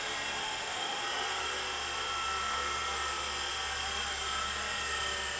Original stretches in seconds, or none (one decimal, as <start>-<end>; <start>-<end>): 0.0-0.4; 1.0-5.4